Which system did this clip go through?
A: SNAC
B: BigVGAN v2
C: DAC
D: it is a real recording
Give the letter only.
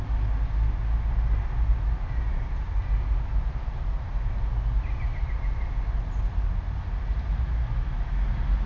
D